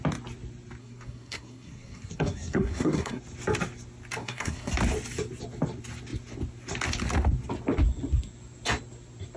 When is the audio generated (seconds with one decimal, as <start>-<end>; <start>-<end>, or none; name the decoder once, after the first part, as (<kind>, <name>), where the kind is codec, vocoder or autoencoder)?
0.8-3.2 (codec, SNAC); 4.2-4.7